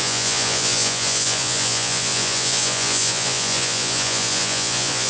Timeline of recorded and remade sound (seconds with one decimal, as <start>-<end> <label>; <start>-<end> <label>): 0.0-5.1 remade